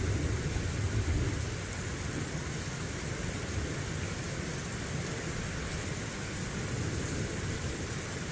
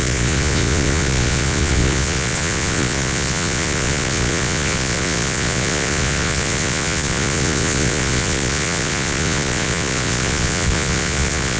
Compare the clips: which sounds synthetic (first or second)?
second